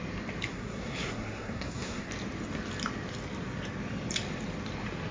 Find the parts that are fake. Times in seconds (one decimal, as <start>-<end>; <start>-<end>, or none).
0.5-2.1